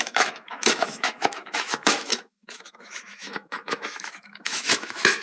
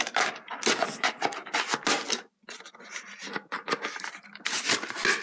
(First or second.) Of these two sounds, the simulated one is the first